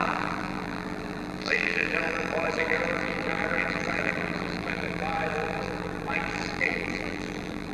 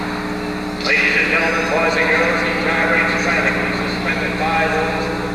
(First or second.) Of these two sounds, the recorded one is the second